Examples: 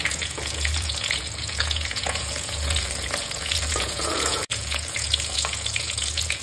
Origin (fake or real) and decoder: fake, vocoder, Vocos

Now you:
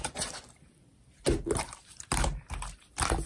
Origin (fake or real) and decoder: fake, vocoder, BigVGAN v2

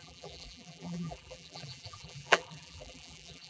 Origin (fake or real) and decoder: fake, vocoder, BigVGAN v2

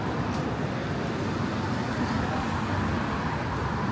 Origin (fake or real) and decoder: real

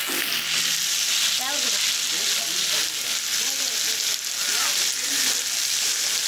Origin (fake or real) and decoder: real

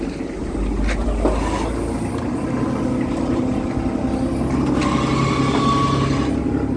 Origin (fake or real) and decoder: real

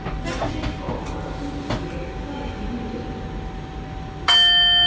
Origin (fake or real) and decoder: real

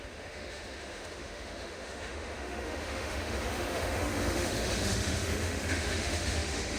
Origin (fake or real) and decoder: fake, autoencoder, DAC-VAE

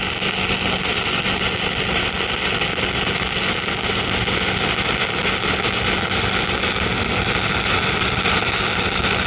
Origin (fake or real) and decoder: real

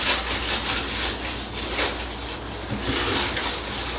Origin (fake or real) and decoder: real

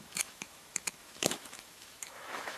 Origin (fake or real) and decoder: fake, autoencoder, DAC-VAE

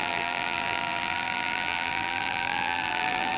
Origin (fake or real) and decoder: fake, vocoder, BigVGAN v2